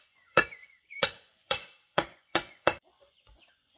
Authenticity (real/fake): fake